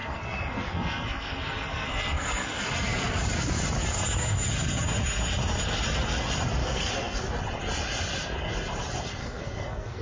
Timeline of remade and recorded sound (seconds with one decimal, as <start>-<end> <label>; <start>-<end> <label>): 0.0-2.6 remade; 2.6-6.6 recorded; 6.6-7.2 remade; 7.2-9.2 recorded; 9.2-10.0 remade